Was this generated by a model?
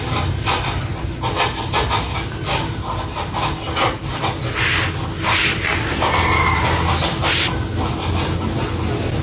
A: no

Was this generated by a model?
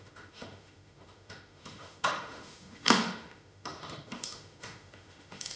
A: yes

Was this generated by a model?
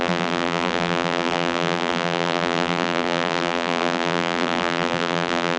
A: yes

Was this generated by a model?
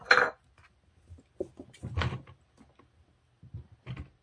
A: no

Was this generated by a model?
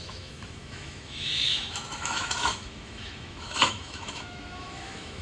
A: yes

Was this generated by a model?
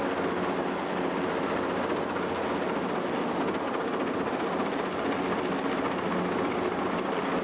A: no